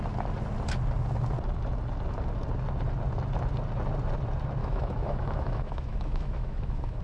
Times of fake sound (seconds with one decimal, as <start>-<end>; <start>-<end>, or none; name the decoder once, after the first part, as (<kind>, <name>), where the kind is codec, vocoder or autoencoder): 4.6-7.0 (autoencoder, DAC-VAE)